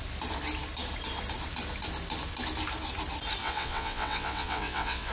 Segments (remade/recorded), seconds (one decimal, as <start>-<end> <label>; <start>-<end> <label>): 0.0-3.4 recorded; 3.4-5.1 remade